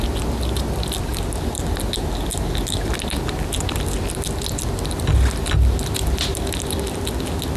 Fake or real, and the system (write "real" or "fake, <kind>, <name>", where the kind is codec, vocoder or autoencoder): real